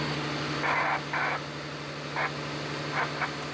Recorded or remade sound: recorded